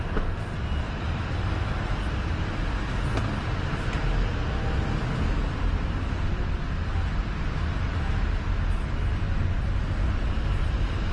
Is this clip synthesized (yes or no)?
no